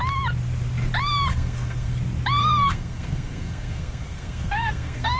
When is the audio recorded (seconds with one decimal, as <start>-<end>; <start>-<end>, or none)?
0.0-1.3; 2.0-2.4